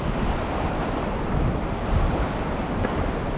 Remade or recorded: recorded